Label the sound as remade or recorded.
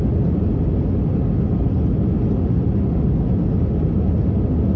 recorded